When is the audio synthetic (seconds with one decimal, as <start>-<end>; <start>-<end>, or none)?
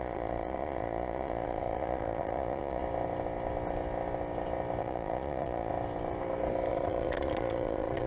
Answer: 0.0-2.8; 4.8-5.7; 6.7-8.1